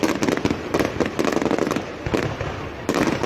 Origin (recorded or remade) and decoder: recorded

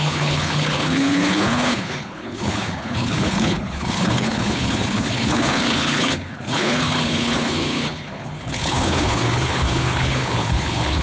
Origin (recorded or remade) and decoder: remade, codec, HILCodec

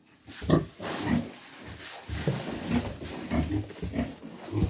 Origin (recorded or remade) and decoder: recorded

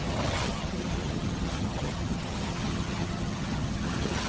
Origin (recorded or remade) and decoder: remade, vocoder, HiFi-GAN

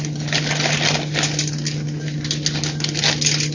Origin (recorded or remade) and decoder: recorded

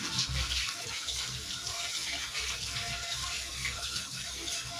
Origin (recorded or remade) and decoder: remade, codec, SNAC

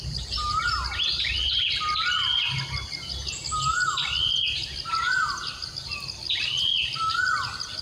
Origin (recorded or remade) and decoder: recorded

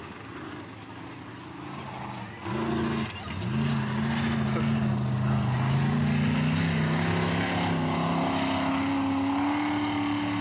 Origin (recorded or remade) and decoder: recorded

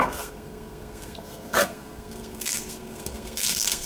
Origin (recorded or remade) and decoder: remade, codec, SNAC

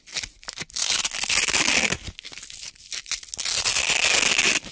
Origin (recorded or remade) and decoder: recorded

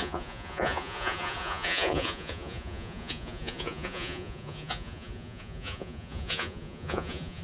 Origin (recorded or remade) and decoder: remade, vocoder, Vocos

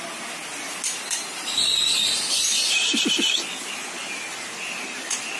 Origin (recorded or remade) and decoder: recorded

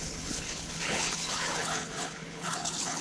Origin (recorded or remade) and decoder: remade, codec, HILCodec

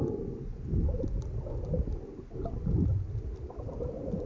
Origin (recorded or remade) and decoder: recorded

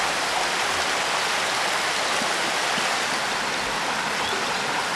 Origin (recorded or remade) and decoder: recorded